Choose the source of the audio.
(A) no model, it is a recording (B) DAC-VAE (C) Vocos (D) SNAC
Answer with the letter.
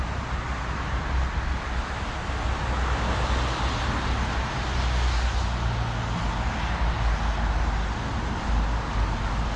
A